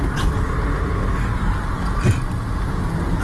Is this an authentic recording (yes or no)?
yes